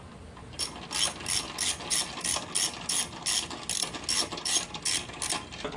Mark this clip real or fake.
real